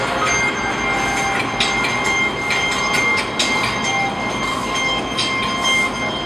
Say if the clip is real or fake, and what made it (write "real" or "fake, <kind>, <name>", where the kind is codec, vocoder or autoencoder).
real